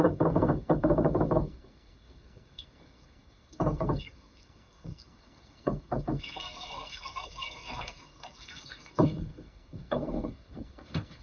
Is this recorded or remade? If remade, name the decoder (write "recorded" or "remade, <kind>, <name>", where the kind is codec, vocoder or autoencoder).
remade, codec, SNAC